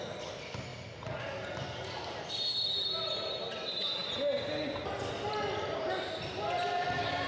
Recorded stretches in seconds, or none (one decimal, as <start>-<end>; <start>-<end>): 0.0-7.3